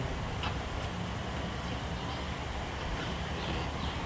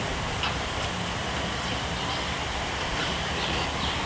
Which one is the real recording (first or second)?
first